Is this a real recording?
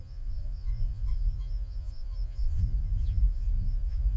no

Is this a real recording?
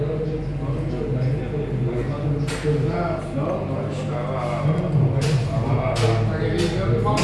yes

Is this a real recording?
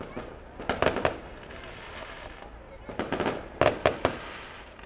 yes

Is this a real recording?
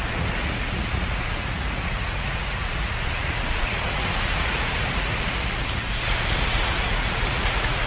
no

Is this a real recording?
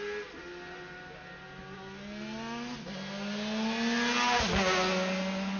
yes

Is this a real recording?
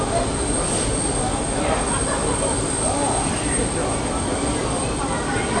yes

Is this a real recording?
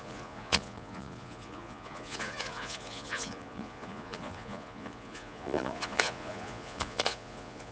no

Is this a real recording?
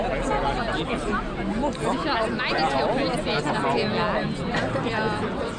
yes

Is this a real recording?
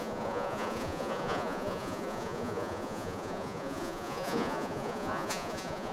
no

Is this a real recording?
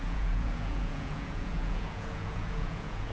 no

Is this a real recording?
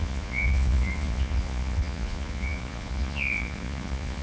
no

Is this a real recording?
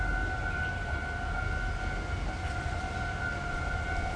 yes